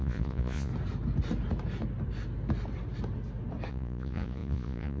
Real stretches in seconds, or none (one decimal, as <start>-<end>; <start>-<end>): 0.7-3.7